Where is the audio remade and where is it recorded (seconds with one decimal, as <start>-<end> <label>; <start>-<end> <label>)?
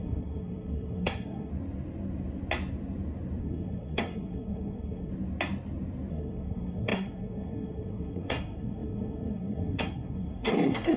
0.0-1.5 remade; 1.5-3.4 recorded; 3.4-5.1 remade; 5.1-6.1 recorded; 6.1-11.0 remade